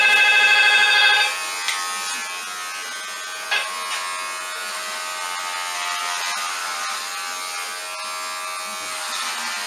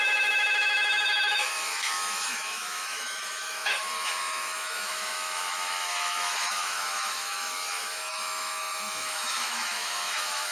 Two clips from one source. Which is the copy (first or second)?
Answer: second